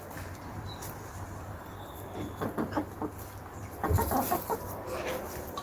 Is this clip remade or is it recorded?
recorded